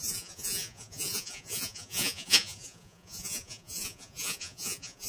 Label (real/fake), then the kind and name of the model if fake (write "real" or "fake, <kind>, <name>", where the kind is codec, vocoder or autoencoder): fake, vocoder, Vocos